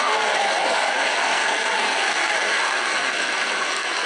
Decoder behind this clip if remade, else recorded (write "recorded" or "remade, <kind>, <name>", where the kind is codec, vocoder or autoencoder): remade, codec, SNAC